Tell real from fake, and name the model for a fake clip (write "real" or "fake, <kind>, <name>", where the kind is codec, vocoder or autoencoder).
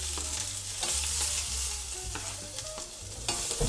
real